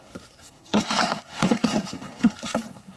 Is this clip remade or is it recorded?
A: remade